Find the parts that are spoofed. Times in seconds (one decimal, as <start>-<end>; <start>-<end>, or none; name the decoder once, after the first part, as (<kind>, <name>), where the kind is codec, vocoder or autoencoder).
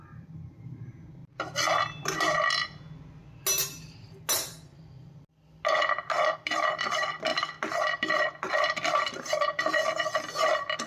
none